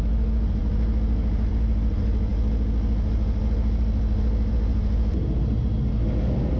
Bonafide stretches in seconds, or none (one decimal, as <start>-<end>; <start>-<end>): 0.0-6.6